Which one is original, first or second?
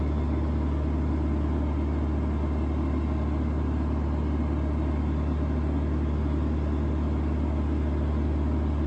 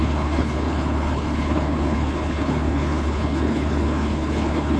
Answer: first